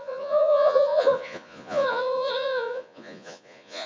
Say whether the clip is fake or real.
fake